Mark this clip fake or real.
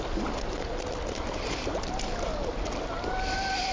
real